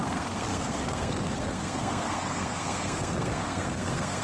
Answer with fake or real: fake